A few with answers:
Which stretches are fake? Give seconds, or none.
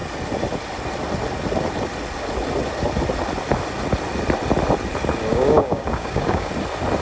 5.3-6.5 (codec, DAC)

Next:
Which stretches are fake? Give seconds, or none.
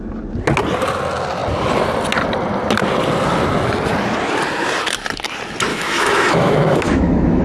5.7-7.4 (autoencoder, DAC-VAE)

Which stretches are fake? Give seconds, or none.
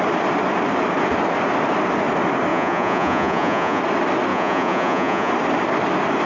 2.5-3.8 (vocoder, Vocos); 4.3-5.3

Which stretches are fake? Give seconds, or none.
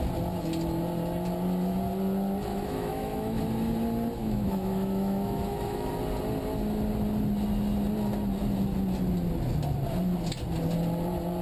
2.5-3.4 (autoencoder, DAC-VAE); 4.2-5.9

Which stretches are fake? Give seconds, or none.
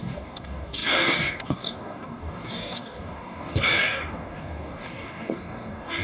0.0-6.0 (codec, DAC)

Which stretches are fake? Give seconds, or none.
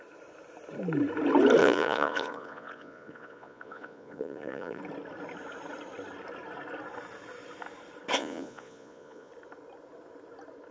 1.6-4.8 (vocoder, Vocos); 8.2-9.3